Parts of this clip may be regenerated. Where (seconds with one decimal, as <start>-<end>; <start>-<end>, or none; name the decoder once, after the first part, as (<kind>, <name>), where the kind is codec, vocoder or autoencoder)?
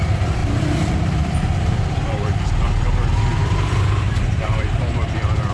0.4-2.9 (vocoder, BigVGAN v2); 3.4-5.5